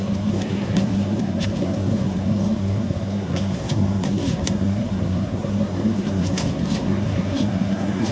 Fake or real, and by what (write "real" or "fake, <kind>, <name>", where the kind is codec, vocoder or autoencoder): fake, codec, SNAC